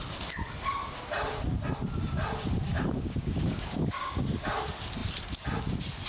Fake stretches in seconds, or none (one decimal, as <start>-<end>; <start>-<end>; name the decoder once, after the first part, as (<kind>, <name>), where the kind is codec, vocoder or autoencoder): 2.7-4.2 (codec, DAC)